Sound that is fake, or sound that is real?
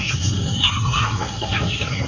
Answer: fake